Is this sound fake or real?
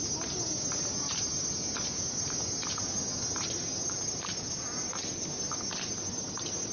real